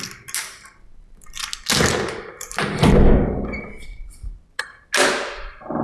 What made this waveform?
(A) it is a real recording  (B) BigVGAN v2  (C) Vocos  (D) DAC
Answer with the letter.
A